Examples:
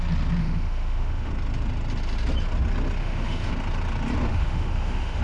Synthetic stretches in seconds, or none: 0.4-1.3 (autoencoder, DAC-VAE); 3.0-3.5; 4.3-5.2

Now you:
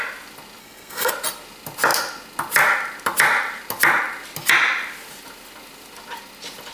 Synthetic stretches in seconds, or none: 0.6-1.1 (codec, SNAC)